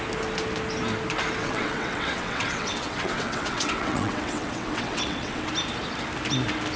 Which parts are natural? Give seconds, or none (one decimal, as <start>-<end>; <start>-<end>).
0.0-1.4; 5.5-6.8